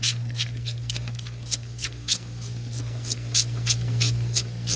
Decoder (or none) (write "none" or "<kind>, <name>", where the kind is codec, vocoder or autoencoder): codec, SNAC